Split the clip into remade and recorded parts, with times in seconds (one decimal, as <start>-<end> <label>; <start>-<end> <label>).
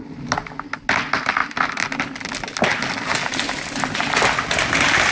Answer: 0.0-5.1 recorded